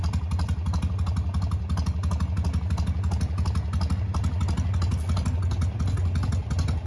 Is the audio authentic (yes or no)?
yes